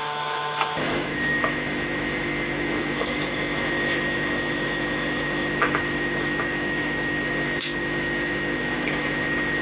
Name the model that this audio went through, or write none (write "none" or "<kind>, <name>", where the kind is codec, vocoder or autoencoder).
autoencoder, DAC-VAE